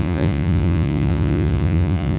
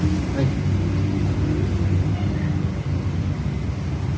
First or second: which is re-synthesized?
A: first